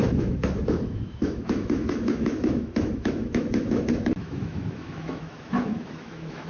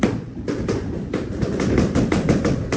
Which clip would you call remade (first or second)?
first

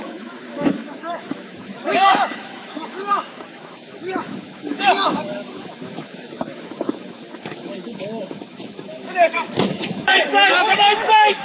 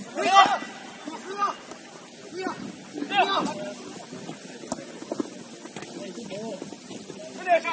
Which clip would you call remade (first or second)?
first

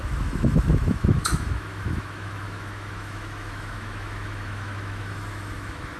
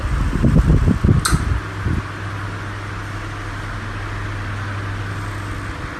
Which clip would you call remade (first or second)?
first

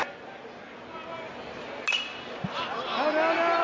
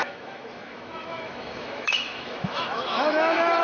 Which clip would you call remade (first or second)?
second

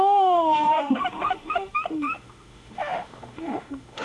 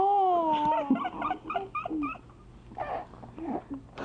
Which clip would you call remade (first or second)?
first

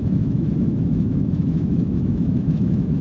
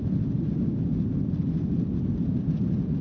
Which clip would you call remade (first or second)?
first